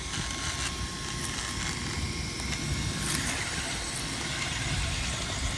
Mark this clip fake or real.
real